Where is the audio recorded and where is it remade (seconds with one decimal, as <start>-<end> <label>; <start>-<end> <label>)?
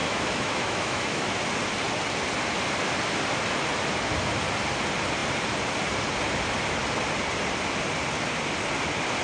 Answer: 0.0-1.4 remade; 1.4-9.2 recorded